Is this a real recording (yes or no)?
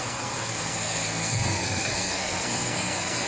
no